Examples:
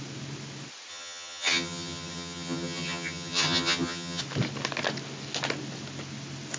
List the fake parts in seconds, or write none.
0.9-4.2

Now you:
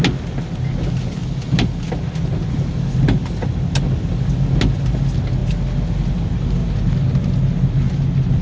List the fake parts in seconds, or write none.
none

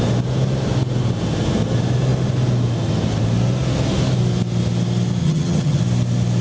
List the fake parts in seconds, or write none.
5.2-5.8

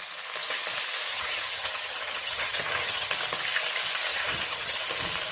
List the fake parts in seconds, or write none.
1.1-3.1; 4.1-4.8

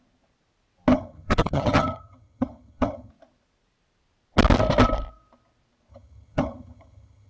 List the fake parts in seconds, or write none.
0.9-3.1; 5.9-7.3

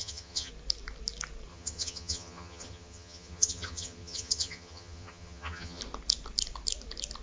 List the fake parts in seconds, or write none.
0.0-0.5; 1.5-5.8

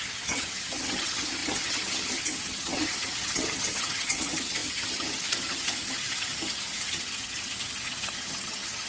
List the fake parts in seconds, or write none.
0.0-8.9